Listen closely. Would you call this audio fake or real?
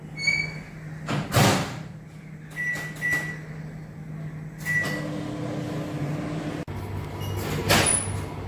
real